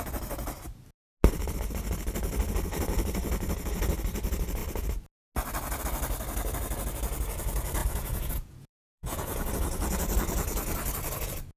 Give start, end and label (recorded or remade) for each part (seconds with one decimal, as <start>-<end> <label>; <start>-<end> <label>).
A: 0.0-7.8 recorded; 7.8-9.5 remade; 9.5-11.6 recorded